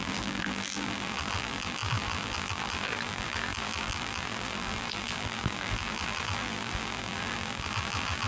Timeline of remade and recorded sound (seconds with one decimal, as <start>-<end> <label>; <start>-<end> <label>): 0.0-8.3 remade